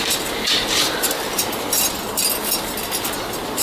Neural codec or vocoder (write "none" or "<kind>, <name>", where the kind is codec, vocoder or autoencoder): none